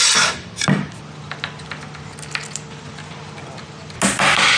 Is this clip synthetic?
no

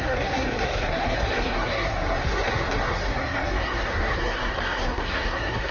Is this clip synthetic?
yes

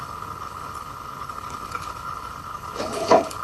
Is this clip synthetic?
yes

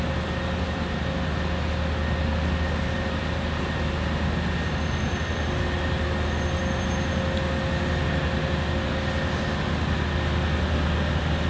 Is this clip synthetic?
no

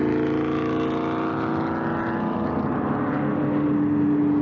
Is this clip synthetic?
no